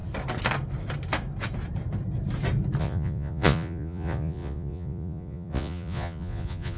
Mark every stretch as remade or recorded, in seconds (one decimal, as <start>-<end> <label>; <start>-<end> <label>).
0.0-2.8 recorded; 2.8-6.8 remade